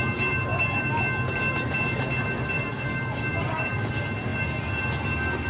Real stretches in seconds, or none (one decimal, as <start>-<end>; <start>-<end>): 0.0-2.7; 3.9-5.5